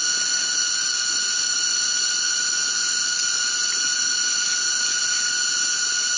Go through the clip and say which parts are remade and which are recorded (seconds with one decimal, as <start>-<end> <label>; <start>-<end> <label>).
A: 0.0-1.7 recorded; 1.7-4.5 remade; 4.5-6.2 recorded